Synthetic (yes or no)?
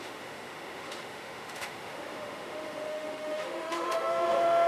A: yes